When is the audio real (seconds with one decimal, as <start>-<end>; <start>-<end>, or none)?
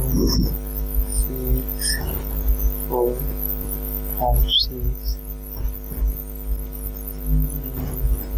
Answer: 0.0-8.4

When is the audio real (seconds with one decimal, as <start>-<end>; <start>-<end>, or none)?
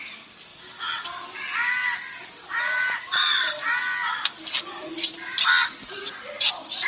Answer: 0.0-6.9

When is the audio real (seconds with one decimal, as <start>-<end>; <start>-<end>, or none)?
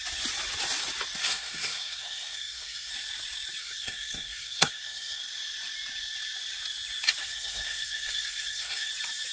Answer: 0.0-1.2; 2.9-3.6; 5.2-7.2; 8.9-9.3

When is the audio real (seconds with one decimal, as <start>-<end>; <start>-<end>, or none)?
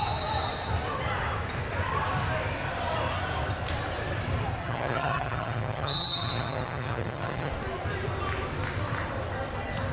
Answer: 0.0-4.6; 7.5-9.9